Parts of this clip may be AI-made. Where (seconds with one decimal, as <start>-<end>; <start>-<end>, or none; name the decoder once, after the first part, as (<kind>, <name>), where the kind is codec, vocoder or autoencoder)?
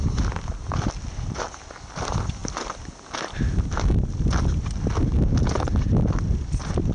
none